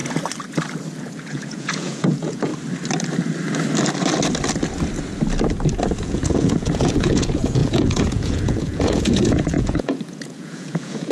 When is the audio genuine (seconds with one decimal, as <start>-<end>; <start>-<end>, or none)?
0.0-1.1; 2.5-6.0

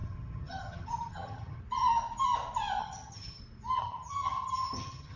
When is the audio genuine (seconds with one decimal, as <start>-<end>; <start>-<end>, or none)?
1.6-2.8; 3.4-3.8

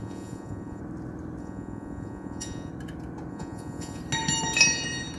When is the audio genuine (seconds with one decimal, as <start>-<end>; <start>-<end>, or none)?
0.8-1.4; 2.7-3.3; 4.0-5.2

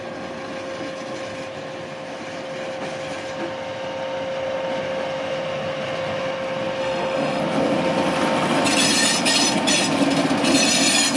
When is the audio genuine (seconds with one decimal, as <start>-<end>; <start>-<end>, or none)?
0.0-6.8; 7.4-11.2

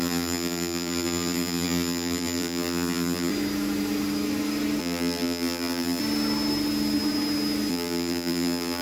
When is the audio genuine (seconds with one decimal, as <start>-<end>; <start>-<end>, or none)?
3.3-4.8; 6.0-7.7

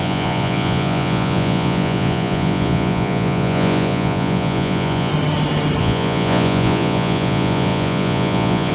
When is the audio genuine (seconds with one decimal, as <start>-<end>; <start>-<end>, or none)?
5.1-5.8

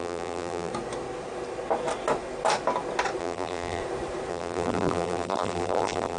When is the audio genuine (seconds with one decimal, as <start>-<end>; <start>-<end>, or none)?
0.7-3.2; 3.8-4.3

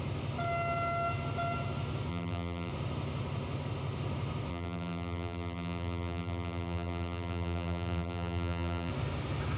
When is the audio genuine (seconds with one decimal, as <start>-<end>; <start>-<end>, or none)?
0.0-2.1; 2.7-4.5; 8.9-9.6